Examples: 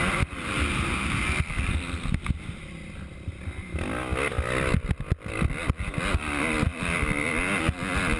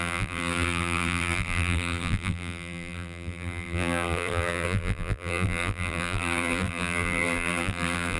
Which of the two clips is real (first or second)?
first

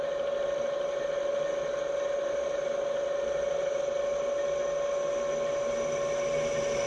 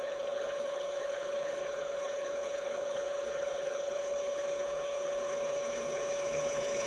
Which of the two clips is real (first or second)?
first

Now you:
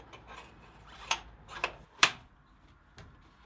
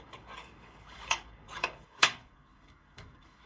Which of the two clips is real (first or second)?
first